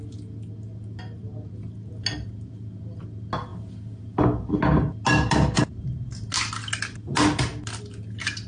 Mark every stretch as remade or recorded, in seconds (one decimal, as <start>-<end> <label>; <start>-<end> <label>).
0.0-8.5 recorded